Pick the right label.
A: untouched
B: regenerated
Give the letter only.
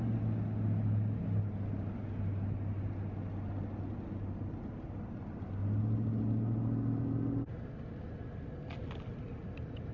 A